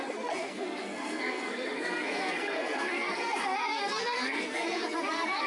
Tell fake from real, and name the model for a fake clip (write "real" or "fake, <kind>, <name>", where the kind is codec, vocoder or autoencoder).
fake, codec, SNAC